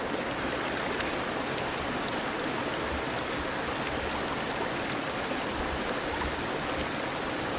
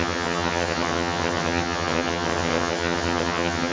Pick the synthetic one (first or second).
second